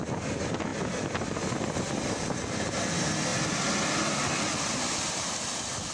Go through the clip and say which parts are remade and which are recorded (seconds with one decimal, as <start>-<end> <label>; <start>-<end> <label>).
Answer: 0.0-5.9 recorded